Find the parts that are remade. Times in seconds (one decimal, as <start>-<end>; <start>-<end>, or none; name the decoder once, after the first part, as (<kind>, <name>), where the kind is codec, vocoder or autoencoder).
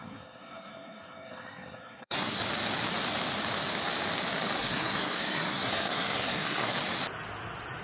0.0-2.4 (codec, SNAC); 4.6-6.7